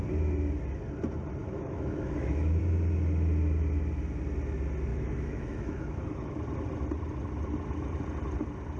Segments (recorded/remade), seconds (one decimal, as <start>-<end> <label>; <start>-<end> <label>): 0.0-1.4 recorded; 1.4-2.6 remade; 2.6-4.9 recorded; 4.9-6.4 remade; 6.4-8.8 recorded